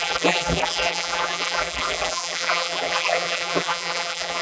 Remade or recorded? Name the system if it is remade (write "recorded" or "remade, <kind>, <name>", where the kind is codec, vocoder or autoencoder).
remade, vocoder, BigVGAN v2